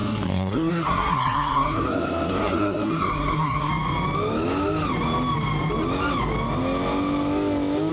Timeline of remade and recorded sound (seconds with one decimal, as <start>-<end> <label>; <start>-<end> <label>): 0.0-3.7 remade; 3.7-7.9 recorded